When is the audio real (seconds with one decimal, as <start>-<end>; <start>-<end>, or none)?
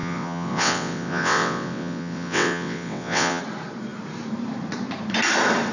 3.4-5.7